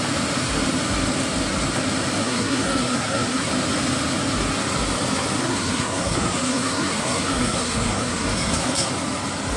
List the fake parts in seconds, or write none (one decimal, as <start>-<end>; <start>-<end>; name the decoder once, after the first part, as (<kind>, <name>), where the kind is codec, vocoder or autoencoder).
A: 2.2-3.5 (codec, SNAC); 5.4-8.9